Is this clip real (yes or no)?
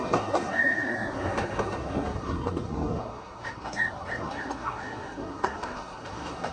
no